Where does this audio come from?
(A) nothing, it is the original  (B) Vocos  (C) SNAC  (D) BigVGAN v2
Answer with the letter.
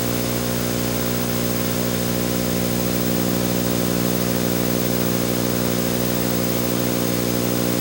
A